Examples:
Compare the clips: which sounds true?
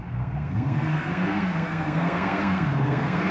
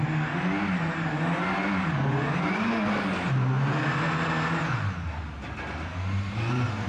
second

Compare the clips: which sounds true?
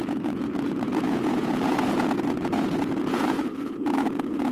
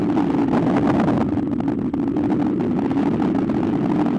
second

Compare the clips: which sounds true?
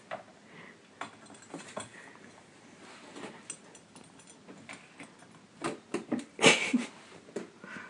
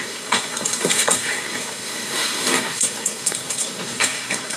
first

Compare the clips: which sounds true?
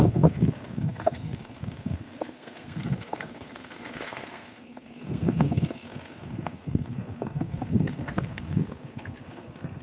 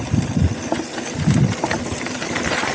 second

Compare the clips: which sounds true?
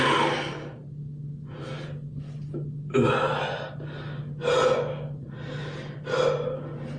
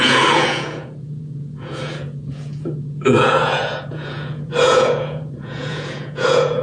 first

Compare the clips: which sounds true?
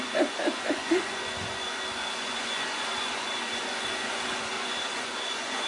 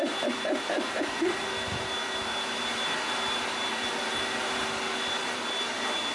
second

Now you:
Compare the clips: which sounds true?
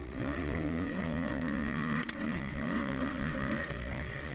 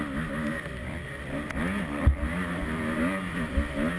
second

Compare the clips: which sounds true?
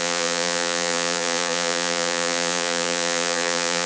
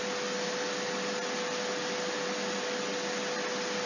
second